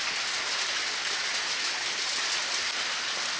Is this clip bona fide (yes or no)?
yes